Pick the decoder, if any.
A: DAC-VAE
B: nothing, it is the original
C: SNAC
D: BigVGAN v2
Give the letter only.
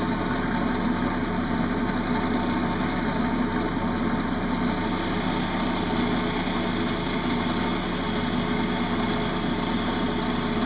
B